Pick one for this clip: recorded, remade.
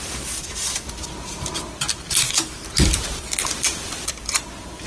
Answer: remade